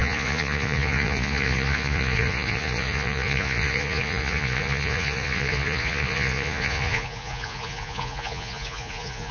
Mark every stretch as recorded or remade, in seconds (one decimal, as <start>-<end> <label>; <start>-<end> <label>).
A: 0.0-9.3 remade